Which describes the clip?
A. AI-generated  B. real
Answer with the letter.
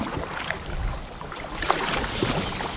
B